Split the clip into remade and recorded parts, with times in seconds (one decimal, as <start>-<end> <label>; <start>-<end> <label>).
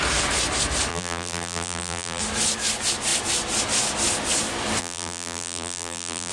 0.0-0.9 recorded; 0.9-2.2 remade; 2.2-4.8 recorded; 4.8-6.3 remade